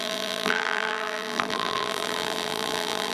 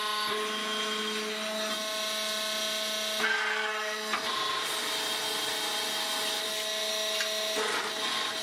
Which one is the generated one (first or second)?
first